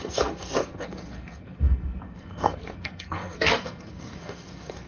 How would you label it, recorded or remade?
remade